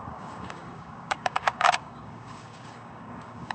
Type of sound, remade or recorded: remade